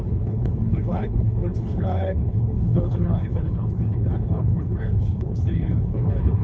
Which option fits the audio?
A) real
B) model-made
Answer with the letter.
B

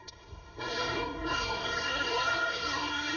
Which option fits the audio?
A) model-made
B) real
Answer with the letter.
A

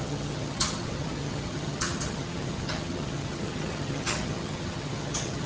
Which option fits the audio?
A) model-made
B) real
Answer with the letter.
A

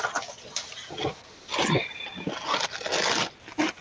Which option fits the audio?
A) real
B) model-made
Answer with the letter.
A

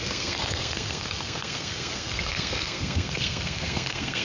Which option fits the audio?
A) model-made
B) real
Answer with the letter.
A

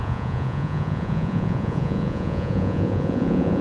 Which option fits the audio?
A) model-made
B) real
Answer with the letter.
A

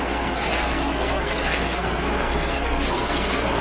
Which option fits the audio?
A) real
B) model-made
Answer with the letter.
B